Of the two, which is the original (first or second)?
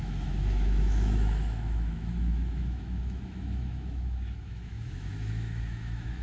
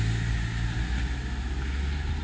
second